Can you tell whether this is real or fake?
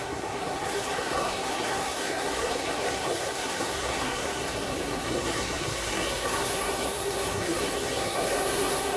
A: fake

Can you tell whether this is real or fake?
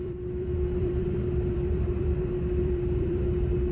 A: fake